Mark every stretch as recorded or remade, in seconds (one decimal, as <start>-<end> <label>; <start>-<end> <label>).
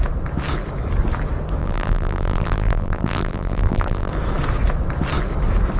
0.0-1.6 recorded; 1.6-4.1 remade; 4.1-5.8 recorded